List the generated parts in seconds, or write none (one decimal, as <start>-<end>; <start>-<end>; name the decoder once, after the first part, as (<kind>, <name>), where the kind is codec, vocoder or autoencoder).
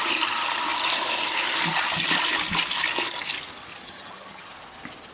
3.7-4.5 (vocoder, HiFi-GAN)